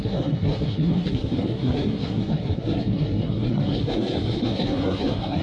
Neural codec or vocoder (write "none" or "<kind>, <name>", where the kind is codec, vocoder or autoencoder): codec, SNAC